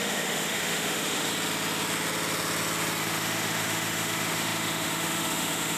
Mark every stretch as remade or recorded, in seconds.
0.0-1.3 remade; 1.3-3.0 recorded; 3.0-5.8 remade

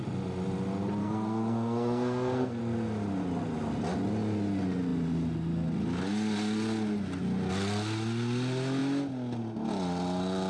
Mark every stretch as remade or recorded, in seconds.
0.0-1.0 recorded; 1.0-2.6 remade; 2.6-10.5 recorded

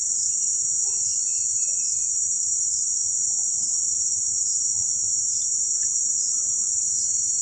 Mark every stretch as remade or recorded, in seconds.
0.0-0.5 remade; 0.5-1.6 recorded; 1.6-4.1 remade; 4.1-7.4 recorded

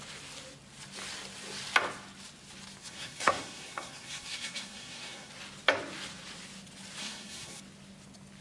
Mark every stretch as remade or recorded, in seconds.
0.0-2.8 recorded; 2.8-5.3 remade; 5.3-7.0 recorded; 7.0-7.6 remade; 7.6-8.4 recorded